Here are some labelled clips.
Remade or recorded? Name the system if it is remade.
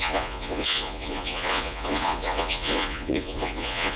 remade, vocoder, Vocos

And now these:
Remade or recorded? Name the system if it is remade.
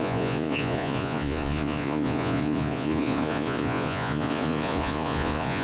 remade, vocoder, Vocos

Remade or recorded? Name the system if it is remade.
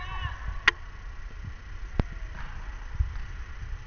recorded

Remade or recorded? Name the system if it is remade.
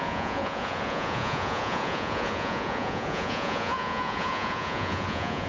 remade, vocoder, Vocos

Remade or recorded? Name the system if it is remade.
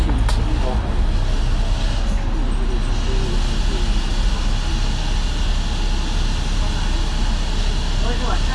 recorded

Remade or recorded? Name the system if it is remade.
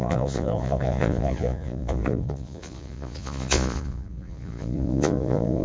remade, vocoder, Vocos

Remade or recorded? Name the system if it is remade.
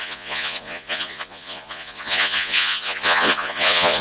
remade, vocoder, Vocos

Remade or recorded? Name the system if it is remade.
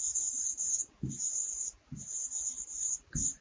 recorded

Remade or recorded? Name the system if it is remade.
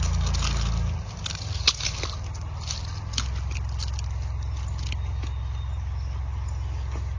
recorded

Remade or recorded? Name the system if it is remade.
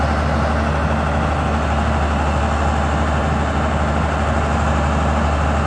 recorded